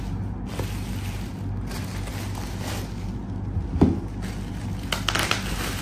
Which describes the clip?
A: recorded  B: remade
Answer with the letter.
A